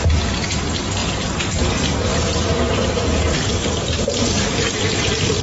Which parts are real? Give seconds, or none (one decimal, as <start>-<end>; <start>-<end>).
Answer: 0.0-5.4